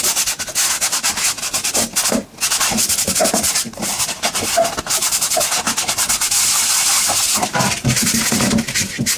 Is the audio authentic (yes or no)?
yes